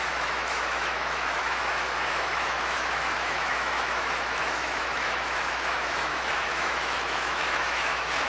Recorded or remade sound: remade